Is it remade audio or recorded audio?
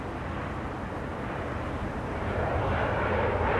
recorded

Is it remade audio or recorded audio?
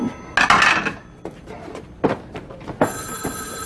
recorded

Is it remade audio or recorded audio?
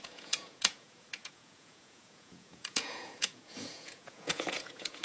remade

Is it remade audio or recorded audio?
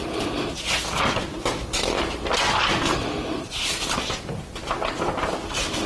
remade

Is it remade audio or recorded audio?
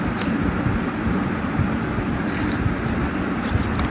recorded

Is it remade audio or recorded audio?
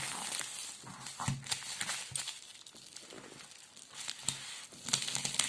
recorded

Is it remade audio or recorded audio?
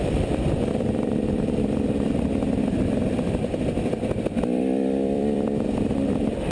remade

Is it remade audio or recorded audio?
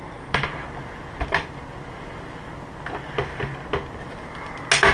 recorded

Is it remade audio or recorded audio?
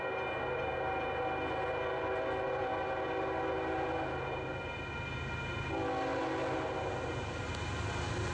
recorded